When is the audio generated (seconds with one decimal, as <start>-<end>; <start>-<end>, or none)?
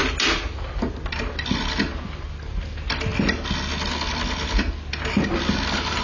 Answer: none